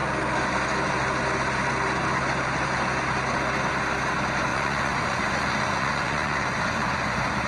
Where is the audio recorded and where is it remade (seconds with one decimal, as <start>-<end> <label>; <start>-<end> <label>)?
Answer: 0.0-4.5 recorded; 4.5-7.5 remade

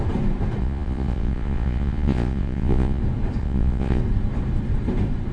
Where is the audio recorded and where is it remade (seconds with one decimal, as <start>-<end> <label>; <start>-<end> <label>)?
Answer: 0.0-0.6 recorded; 0.6-3.0 remade; 3.0-3.4 recorded; 3.4-4.0 remade; 4.0-5.3 recorded

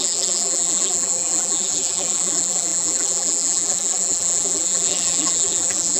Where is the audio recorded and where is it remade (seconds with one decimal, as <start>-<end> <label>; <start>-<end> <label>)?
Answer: 0.0-6.0 remade